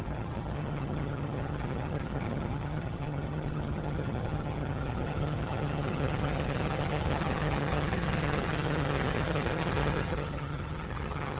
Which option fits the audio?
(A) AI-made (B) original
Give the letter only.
A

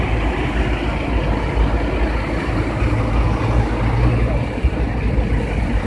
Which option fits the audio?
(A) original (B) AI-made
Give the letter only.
A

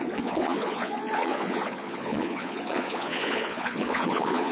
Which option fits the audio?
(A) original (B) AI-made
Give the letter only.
B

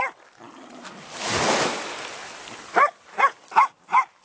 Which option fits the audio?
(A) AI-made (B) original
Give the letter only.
B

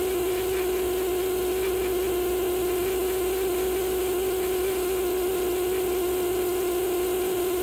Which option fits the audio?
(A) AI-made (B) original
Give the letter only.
B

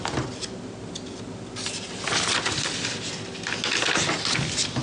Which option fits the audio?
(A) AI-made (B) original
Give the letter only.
B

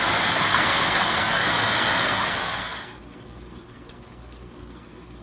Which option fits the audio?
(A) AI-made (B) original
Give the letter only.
A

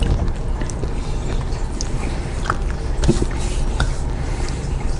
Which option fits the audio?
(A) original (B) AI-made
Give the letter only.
A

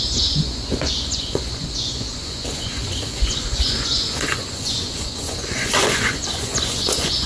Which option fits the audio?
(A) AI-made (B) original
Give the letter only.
A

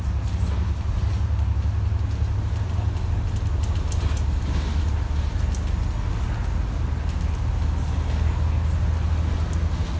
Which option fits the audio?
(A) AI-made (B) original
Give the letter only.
B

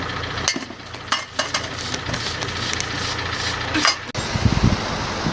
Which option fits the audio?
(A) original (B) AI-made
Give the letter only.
A